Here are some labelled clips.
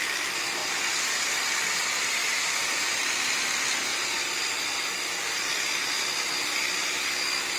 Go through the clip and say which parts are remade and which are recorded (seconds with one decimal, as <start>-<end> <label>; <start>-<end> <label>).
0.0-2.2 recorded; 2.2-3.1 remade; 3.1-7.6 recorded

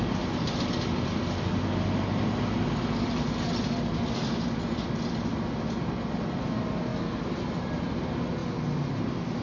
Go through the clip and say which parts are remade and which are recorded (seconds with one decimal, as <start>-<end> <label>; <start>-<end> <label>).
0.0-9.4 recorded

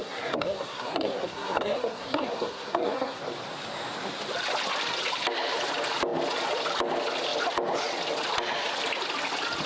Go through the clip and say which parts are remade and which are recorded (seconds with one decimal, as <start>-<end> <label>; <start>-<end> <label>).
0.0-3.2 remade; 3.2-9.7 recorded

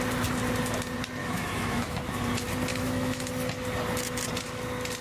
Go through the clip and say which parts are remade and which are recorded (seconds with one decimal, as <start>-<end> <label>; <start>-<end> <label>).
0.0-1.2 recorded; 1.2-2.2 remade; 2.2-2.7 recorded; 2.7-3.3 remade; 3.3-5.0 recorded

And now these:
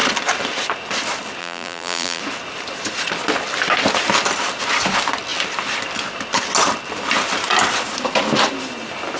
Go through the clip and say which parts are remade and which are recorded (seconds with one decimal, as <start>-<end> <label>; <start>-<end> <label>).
0.0-1.4 recorded; 1.4-2.2 remade; 2.2-9.2 recorded

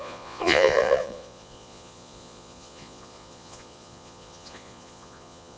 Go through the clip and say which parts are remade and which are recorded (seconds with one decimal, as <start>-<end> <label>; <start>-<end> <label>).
0.0-5.6 remade

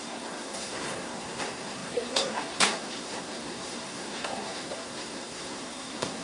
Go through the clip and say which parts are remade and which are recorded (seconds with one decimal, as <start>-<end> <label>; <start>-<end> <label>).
0.0-6.2 remade

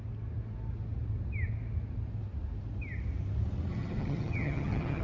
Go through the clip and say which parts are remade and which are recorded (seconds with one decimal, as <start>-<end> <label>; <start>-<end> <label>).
0.0-3.7 recorded; 3.7-5.0 remade